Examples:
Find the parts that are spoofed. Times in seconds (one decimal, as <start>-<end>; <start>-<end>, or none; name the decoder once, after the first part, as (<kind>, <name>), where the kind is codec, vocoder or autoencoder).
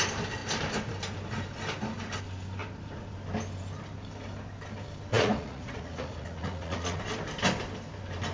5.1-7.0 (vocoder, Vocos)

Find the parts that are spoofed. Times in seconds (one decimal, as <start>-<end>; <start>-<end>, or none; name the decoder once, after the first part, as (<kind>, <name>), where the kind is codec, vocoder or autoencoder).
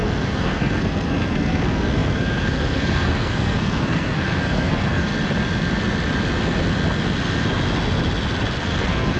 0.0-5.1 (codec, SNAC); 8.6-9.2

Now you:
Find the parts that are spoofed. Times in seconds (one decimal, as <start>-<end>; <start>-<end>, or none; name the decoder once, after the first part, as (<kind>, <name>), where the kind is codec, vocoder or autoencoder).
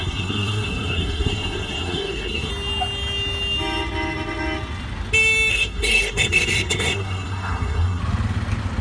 0.0-2.5 (codec, SNAC); 5.5-8.0